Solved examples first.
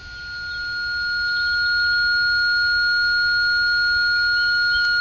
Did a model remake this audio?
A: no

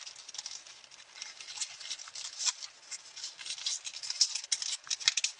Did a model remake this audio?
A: no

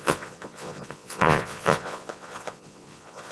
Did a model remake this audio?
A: yes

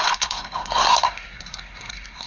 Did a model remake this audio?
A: yes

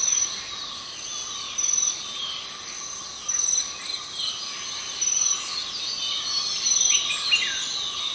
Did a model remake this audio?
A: no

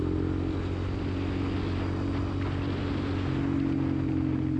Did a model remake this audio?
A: no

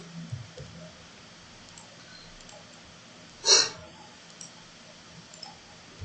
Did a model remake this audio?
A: no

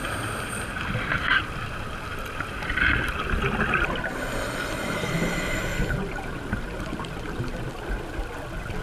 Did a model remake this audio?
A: no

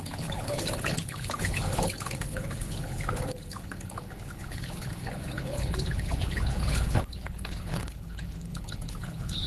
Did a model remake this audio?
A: yes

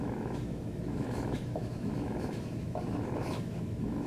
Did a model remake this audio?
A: yes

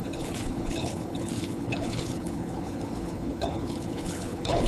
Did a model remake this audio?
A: yes